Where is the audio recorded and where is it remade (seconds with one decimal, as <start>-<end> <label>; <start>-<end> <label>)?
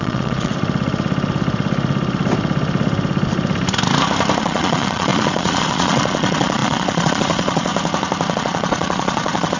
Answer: 0.0-0.5 remade; 0.5-4.4 recorded; 4.4-7.7 remade; 7.7-8.3 recorded; 8.3-9.6 remade